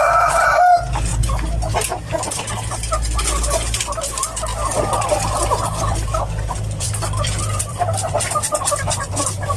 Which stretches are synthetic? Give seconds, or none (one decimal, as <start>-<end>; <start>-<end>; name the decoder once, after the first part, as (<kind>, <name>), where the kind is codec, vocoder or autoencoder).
4.5-9.6 (vocoder, BigVGAN v2)